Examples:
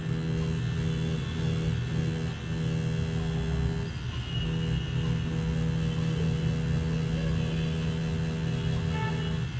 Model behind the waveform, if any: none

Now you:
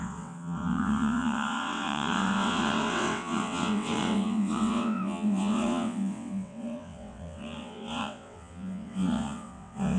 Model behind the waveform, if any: vocoder, WaveNeXt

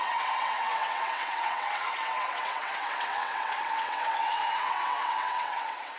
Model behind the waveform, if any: vocoder, WaveNeXt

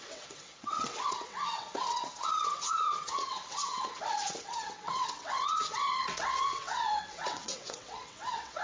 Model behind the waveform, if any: vocoder, WaveNeXt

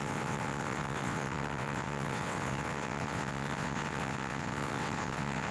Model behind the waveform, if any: vocoder, WaveNeXt